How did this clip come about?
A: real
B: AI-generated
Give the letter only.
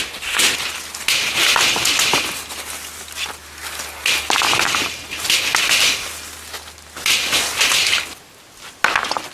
A